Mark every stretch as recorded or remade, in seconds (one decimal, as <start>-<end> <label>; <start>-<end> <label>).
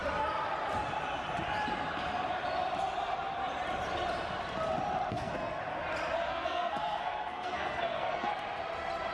0.0-5.1 recorded; 5.1-5.6 remade; 5.6-6.3 recorded; 6.3-8.3 remade; 8.3-9.1 recorded